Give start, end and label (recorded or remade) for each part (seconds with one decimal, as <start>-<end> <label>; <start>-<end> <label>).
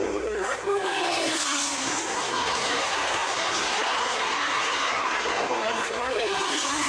0.0-6.9 remade